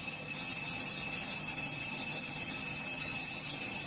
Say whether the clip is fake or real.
fake